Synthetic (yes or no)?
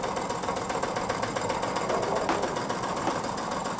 yes